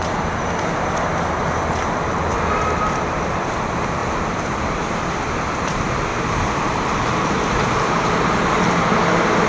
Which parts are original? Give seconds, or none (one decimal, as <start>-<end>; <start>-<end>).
0.0-4.0; 4.8-6.1; 8.1-9.5